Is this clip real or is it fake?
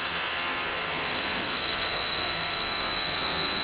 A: fake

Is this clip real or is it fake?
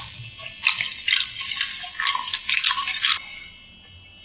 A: real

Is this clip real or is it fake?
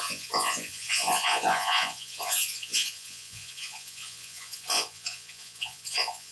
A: fake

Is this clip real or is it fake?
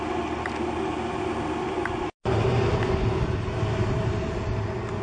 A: real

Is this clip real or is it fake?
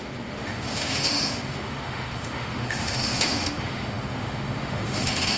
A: fake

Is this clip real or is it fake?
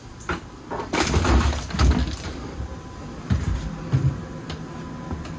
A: real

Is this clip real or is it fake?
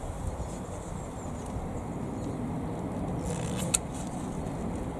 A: real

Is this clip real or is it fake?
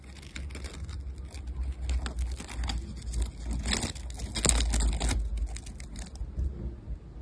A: real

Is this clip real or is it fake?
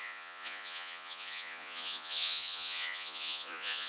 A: fake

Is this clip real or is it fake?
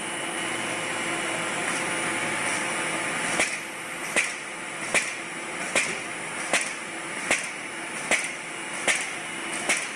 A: real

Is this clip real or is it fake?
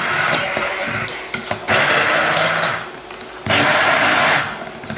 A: real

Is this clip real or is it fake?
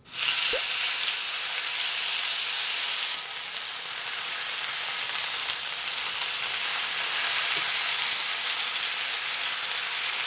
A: real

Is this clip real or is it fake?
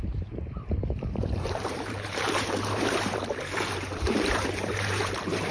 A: fake